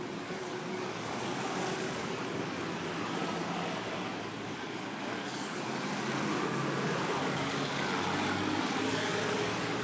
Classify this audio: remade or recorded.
remade